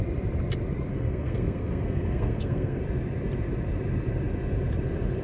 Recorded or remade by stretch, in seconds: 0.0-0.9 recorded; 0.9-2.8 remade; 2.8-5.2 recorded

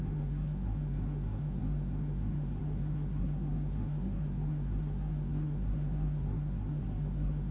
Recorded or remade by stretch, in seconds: 0.0-7.5 remade